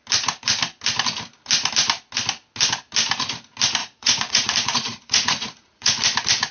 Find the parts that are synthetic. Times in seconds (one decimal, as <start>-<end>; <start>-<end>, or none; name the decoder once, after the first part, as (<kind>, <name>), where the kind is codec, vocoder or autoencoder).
3.8-6.0 (vocoder, Vocos)